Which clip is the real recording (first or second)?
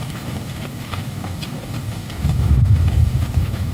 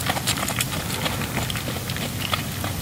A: second